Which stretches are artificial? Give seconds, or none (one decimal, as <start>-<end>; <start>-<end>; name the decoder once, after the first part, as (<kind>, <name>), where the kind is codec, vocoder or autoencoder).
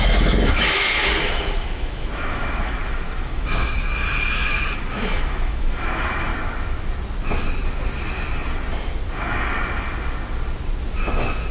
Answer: 0.0-6.3 (autoencoder, DAC-VAE)